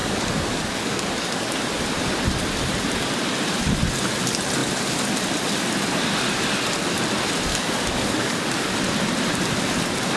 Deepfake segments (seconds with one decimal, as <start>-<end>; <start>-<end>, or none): 0.0-1.5; 7.5-8.7